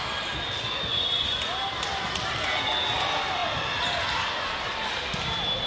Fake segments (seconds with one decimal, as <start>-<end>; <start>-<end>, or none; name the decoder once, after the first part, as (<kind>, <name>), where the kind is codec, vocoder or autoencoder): 0.9-1.4 (vocoder, Vocos)

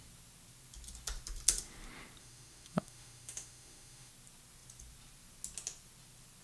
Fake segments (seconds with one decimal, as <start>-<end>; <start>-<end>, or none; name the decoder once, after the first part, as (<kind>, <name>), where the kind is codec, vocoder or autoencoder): 2.2-4.1 (autoencoder, DAC-VAE)

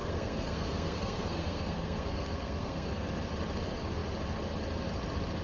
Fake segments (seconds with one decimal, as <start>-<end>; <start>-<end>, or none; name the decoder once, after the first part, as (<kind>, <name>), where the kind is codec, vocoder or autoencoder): 0.0-3.1 (codec, SNAC)

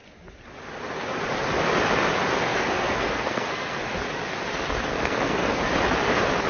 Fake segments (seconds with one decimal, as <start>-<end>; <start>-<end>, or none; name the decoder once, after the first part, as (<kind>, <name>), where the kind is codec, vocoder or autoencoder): 2.5-3.9 (codec, SNAC); 4.9-5.6